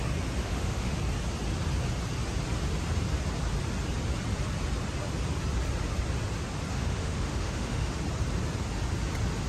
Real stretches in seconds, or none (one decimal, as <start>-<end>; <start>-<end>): 0.0-0.4; 1.0-6.7; 8.0-9.5